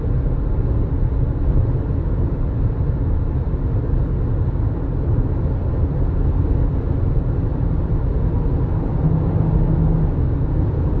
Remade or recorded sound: recorded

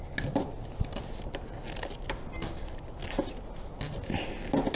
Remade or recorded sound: recorded